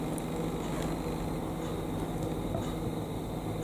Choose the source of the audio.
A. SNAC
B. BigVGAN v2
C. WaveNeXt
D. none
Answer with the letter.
D